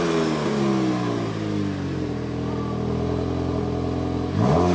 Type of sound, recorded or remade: recorded